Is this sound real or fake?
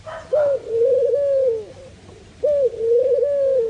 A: real